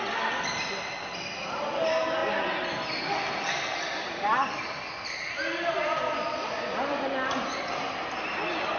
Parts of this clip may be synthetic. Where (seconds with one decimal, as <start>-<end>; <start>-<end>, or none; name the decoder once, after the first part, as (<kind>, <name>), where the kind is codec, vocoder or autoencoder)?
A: none